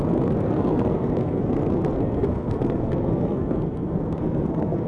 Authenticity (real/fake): fake